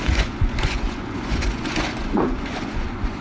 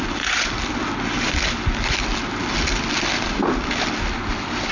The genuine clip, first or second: second